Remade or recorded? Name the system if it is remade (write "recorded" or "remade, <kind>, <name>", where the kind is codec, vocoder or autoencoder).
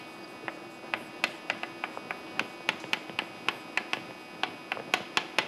recorded